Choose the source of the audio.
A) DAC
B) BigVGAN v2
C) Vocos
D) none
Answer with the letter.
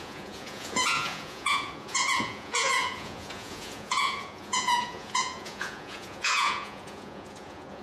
C